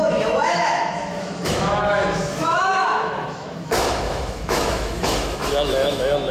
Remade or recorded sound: remade